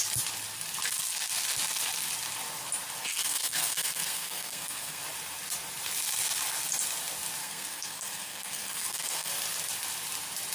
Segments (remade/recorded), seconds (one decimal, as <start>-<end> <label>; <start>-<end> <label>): 0.0-3.0 recorded; 3.0-5.0 remade; 5.0-7.4 recorded; 7.4-9.3 remade; 9.3-10.5 recorded